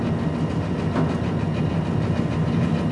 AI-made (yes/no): no